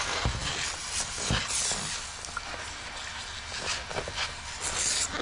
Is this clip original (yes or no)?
yes